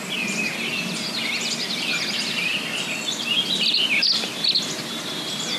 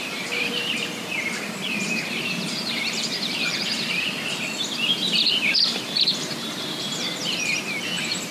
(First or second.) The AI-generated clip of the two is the second